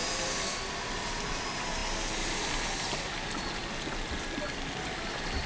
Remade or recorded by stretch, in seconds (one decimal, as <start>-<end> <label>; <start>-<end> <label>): 0.0-5.5 recorded